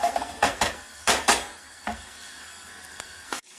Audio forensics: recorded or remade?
remade